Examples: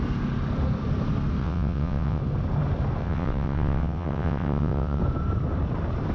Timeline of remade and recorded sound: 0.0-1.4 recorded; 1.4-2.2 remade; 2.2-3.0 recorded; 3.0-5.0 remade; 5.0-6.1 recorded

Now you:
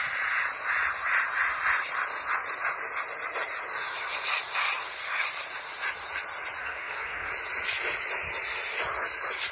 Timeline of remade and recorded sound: 0.0-6.6 recorded; 6.6-7.3 remade; 7.3-9.5 recorded

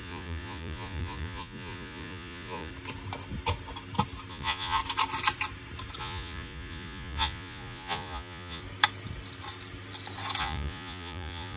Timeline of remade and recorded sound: 0.0-2.7 remade; 2.7-4.3 recorded; 4.3-4.8 remade; 4.8-6.0 recorded; 6.0-8.6 remade; 8.6-10.4 recorded; 10.4-11.6 remade

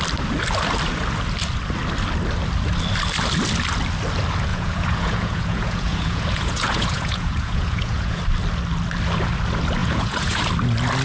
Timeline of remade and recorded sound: 0.0-4.5 recorded; 4.5-8.2 remade; 8.2-9.8 recorded; 9.8-10.4 remade; 10.4-11.0 recorded